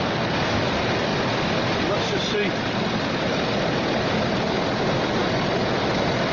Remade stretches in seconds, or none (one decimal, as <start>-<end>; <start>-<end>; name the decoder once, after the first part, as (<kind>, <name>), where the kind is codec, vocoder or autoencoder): none